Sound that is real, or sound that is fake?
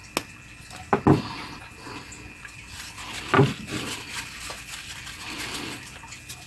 real